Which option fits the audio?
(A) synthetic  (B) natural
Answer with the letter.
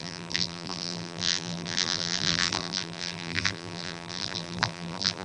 A